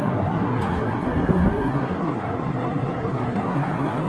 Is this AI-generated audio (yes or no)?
yes